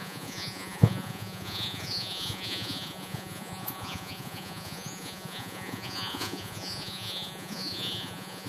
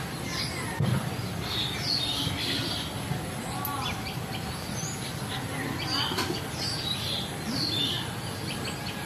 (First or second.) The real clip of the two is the second